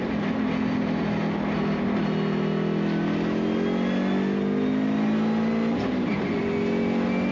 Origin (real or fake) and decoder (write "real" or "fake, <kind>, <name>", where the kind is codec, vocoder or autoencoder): real